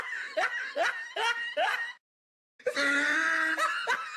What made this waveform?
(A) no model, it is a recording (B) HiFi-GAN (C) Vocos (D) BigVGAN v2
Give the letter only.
A